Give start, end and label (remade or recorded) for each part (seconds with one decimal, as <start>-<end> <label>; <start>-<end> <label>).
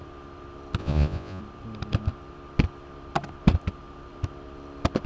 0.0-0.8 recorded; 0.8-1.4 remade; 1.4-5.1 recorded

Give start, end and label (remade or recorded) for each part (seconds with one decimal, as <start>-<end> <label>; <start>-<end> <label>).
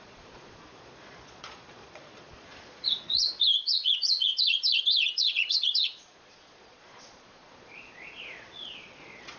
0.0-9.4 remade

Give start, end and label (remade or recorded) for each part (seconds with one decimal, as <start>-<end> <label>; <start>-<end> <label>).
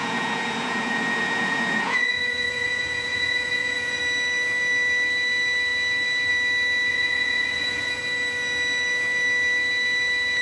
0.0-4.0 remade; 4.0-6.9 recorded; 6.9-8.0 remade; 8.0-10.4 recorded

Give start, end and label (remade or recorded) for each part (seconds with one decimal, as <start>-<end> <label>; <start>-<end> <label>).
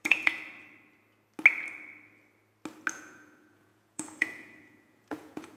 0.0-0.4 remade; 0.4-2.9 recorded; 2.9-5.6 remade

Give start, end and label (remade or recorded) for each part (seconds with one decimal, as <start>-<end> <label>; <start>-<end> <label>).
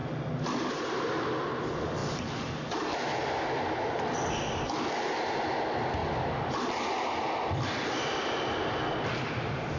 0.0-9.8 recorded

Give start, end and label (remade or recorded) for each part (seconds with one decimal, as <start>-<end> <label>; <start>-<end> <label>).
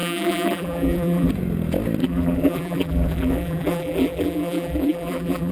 0.0-1.3 remade; 1.3-2.0 recorded; 2.0-5.5 remade